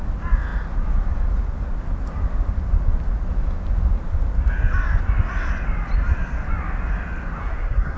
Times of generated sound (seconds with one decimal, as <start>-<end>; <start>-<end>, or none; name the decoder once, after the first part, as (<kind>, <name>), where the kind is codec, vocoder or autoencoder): 7.4-8.0 (codec, SNAC)